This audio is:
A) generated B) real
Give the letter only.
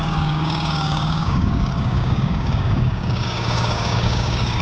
A